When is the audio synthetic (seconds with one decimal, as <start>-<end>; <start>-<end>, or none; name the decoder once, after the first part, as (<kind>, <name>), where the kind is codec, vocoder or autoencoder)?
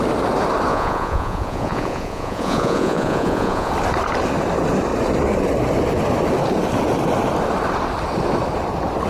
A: 0.7-3.7 (vocoder, Vocos)